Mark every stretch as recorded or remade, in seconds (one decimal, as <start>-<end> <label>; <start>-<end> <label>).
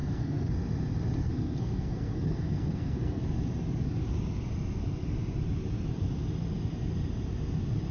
0.0-0.5 remade; 0.5-1.2 recorded; 1.2-3.2 remade; 3.2-7.9 recorded